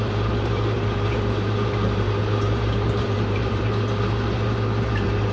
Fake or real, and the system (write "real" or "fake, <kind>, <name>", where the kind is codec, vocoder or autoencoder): fake, vocoder, BigVGAN v2